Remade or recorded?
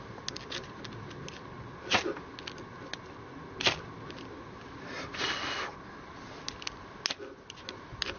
recorded